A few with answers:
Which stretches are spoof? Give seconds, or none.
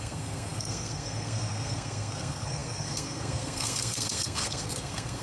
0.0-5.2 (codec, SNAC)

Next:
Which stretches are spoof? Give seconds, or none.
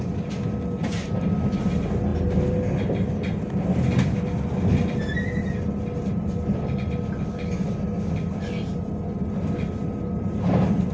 none